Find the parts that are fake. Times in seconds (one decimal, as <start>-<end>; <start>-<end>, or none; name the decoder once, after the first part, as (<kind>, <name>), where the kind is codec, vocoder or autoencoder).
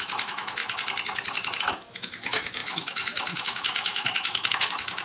0.0-0.6 (autoencoder, DAC-VAE); 1.6-5.0